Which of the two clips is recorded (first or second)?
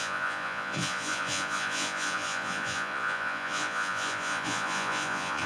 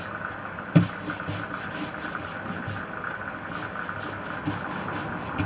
second